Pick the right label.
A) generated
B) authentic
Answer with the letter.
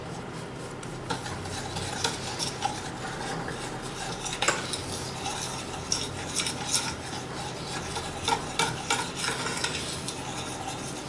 B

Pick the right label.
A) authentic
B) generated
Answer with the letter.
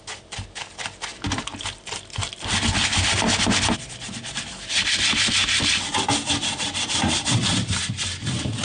A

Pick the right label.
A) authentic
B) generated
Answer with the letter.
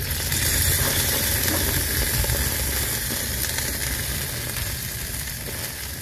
A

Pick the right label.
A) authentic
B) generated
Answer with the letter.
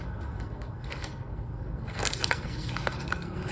B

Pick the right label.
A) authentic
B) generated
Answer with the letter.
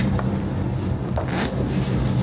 A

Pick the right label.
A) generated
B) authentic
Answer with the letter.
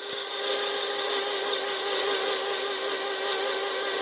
B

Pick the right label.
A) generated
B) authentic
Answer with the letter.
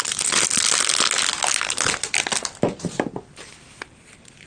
B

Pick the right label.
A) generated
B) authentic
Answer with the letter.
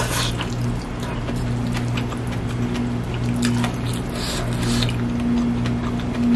B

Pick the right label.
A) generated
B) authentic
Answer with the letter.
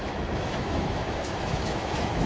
A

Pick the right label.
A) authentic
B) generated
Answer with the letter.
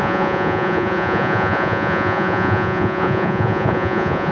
B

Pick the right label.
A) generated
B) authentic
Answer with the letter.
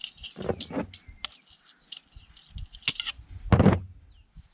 B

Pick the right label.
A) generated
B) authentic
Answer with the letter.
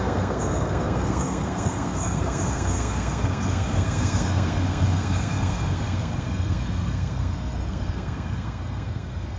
A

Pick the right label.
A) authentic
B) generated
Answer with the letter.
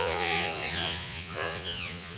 B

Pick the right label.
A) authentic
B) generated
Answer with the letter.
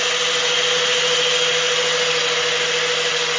A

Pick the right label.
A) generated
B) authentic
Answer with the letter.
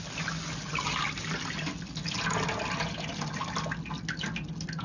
B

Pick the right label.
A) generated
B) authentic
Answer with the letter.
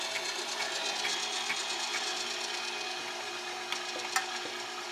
B